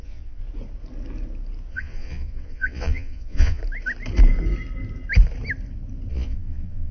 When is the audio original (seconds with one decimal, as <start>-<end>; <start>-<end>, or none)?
0.4-1.7; 3.6-6.1